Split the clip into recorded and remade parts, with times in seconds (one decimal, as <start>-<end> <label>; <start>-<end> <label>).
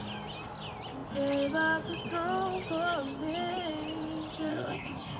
0.0-4.5 recorded; 4.5-5.2 remade